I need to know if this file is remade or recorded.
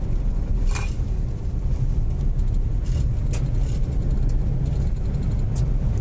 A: recorded